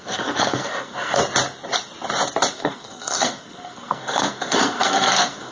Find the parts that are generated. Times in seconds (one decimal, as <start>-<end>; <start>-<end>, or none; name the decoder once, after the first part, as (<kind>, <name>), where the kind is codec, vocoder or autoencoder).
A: 0.0-1.2 (codec, SNAC); 2.5-5.5